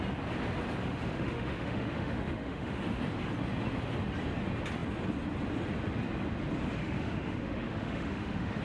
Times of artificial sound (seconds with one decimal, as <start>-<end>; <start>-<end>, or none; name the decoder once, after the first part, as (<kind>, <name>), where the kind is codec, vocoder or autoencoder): 0.8-2.8 (autoencoder, DAC-VAE); 6.8-8.6